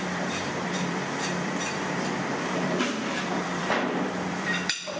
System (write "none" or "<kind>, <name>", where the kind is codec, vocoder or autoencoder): vocoder, BigVGAN v2